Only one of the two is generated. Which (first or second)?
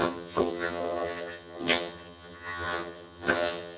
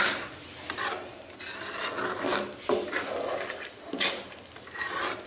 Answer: first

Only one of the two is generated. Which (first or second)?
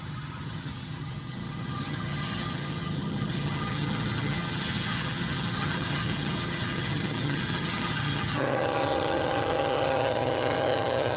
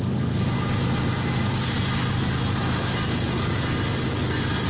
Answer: first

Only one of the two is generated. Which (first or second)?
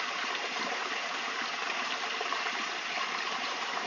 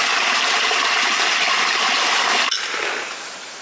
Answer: first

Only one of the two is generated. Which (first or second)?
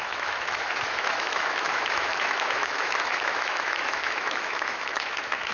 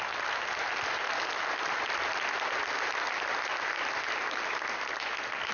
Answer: first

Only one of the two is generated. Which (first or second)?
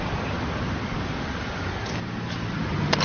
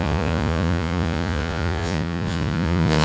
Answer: second